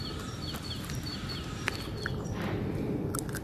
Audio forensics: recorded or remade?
recorded